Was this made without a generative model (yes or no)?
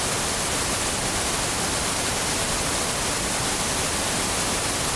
yes